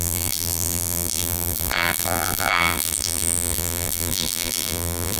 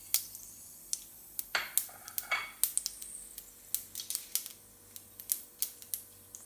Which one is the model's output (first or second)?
first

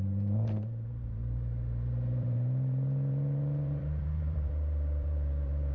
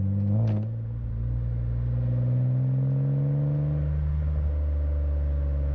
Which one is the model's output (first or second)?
first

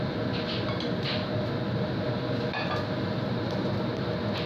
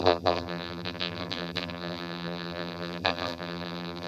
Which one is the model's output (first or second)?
second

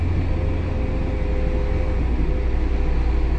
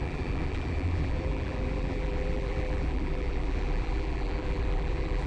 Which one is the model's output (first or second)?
second